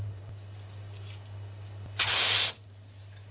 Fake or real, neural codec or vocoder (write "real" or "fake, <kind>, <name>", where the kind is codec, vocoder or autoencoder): real